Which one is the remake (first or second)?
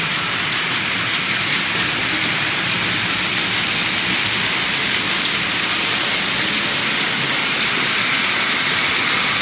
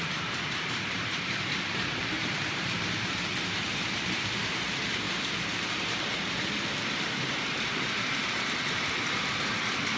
second